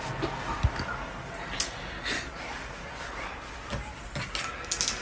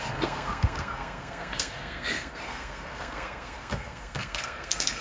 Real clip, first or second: first